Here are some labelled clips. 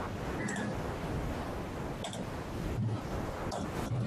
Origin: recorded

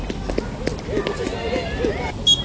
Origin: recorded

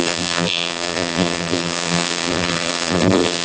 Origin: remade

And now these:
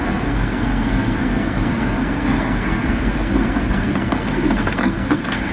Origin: remade